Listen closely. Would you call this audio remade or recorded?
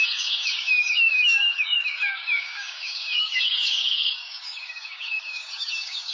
remade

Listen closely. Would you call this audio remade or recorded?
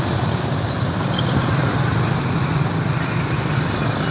recorded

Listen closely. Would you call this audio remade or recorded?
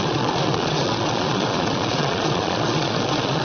remade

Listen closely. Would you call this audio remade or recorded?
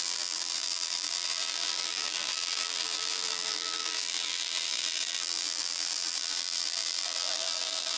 remade